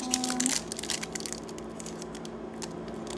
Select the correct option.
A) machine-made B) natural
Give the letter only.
B